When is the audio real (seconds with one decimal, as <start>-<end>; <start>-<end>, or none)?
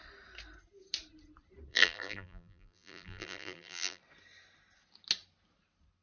0.0-1.7; 4.0-6.0